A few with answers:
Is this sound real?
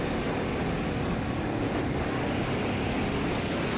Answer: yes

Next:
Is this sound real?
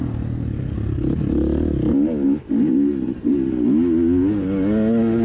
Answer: yes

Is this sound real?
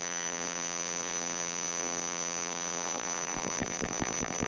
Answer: no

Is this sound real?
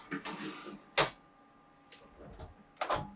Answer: yes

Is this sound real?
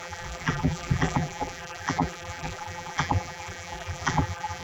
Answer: no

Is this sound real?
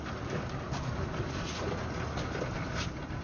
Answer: yes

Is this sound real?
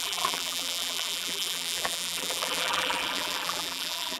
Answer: no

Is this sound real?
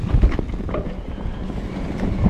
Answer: yes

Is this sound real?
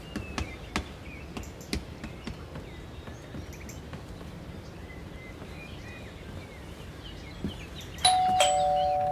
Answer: yes